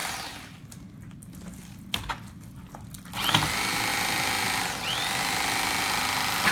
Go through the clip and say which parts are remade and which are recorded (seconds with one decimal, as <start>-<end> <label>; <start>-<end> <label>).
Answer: 0.0-3.9 recorded; 3.9-5.2 remade; 5.2-6.5 recorded